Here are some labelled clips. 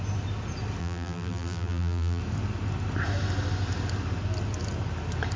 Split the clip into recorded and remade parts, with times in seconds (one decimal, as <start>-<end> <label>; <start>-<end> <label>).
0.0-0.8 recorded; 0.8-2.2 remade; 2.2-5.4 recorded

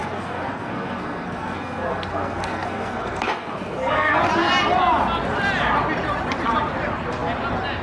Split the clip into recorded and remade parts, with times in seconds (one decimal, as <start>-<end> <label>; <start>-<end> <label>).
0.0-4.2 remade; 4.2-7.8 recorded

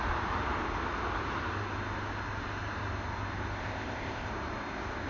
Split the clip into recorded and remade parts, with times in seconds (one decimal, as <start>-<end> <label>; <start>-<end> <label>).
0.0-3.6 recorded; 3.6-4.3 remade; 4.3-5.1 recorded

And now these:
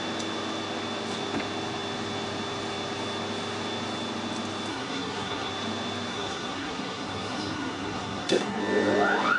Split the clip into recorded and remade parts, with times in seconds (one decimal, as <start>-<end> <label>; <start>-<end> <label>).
0.0-4.7 recorded; 4.7-5.5 remade; 5.5-6.1 recorded; 6.1-8.6 remade; 8.6-9.4 recorded

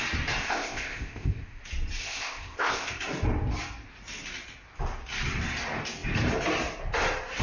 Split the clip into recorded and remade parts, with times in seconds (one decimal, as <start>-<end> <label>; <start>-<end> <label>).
0.0-0.4 recorded; 0.4-1.6 remade; 1.6-2.0 recorded; 2.0-2.9 remade; 2.9-7.4 recorded

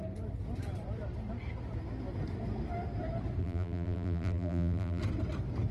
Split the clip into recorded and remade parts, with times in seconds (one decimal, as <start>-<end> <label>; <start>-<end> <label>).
0.0-3.4 recorded; 3.4-5.0 remade; 5.0-5.7 recorded